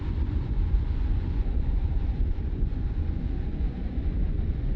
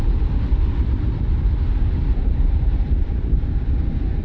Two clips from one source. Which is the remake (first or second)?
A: first